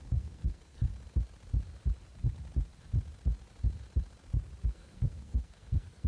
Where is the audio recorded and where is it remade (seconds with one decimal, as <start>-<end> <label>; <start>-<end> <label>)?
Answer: 0.0-0.9 remade; 0.9-4.6 recorded; 4.6-6.1 remade